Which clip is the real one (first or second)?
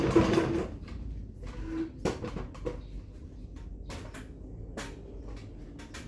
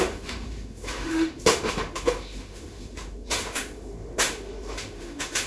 first